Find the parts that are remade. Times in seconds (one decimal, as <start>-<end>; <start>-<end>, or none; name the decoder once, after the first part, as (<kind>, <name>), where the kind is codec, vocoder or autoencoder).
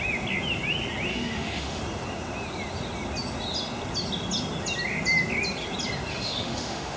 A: 1.1-1.8 (autoencoder, DAC-VAE); 6.1-7.0